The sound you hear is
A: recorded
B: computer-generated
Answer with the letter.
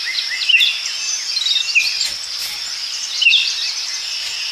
A